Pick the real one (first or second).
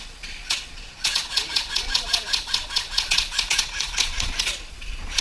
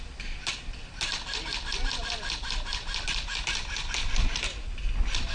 second